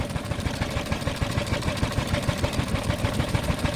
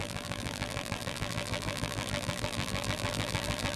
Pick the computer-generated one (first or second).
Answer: second